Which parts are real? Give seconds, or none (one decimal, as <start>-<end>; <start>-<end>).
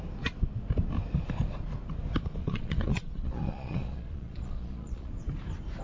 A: 0.0-2.4; 5.1-5.8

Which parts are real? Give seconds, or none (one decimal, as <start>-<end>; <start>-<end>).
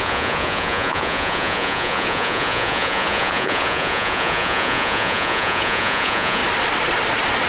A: 6.4-7.5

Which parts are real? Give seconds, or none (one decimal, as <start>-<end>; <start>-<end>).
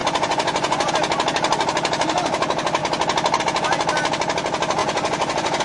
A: 0.9-4.8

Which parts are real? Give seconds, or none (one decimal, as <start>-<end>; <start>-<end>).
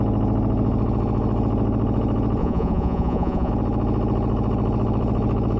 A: 0.0-2.4; 3.5-5.6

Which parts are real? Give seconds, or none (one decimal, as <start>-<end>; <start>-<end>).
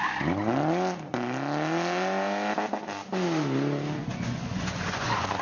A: 0.0-4.0